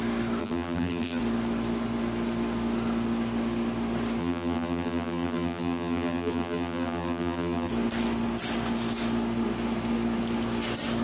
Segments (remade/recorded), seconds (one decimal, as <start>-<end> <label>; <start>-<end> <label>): 0.0-0.4 recorded; 0.4-1.2 remade; 1.2-4.2 recorded; 4.2-7.7 remade; 7.7-11.0 recorded